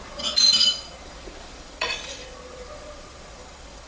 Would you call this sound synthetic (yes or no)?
yes